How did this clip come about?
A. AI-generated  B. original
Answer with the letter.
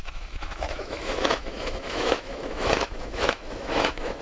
A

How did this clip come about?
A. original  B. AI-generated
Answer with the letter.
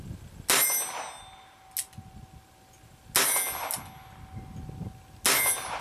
A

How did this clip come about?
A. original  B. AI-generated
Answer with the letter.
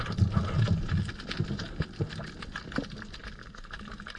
A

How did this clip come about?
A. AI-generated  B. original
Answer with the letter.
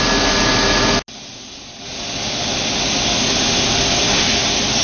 B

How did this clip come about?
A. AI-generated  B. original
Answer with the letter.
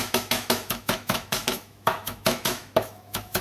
A